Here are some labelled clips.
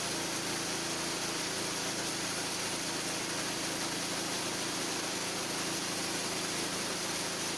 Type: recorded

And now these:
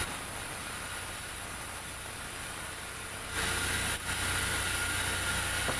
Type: recorded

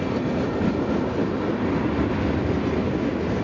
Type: recorded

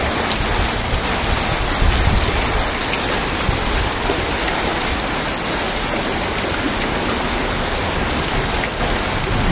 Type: recorded